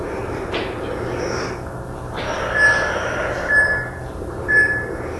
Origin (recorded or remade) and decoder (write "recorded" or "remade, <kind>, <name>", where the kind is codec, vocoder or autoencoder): recorded